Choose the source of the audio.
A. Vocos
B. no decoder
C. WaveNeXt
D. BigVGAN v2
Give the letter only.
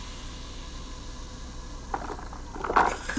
B